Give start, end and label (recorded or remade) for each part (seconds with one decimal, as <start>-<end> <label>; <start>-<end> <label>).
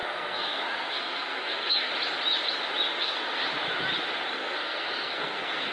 0.0-1.9 remade; 1.9-3.0 recorded; 3.0-3.4 remade; 3.4-4.3 recorded; 4.3-5.7 remade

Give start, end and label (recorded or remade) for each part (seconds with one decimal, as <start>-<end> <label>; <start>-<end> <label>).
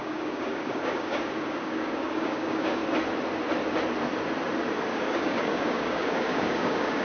0.0-2.8 remade; 2.8-4.9 recorded; 4.9-7.0 remade